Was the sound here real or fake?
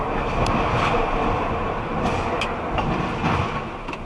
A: real